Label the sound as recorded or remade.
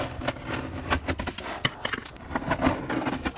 recorded